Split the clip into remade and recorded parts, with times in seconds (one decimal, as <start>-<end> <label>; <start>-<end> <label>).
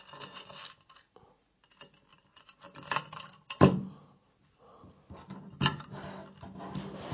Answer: 0.0-2.1 recorded; 2.1-4.3 remade; 4.3-7.1 recorded